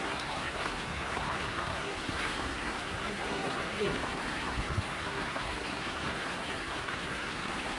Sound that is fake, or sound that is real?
fake